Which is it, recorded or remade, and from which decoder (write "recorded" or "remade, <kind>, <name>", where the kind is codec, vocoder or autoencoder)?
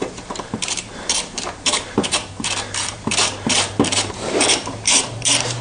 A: remade, vocoder, BigVGAN v2